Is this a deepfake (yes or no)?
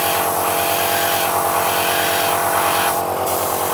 yes